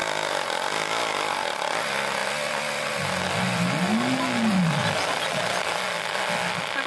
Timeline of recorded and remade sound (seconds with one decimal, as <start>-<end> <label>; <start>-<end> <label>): 0.0-1.0 remade; 1.0-2.2 recorded; 2.2-2.9 remade; 2.9-4.8 recorded; 4.8-5.6 remade; 5.6-6.9 recorded